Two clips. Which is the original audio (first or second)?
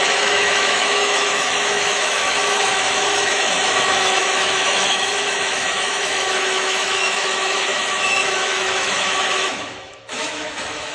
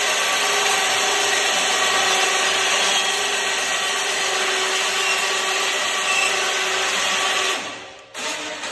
second